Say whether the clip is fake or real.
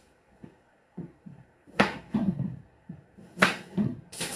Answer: fake